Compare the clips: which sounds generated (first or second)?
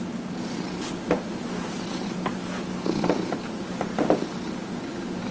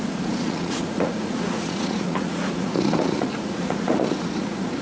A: second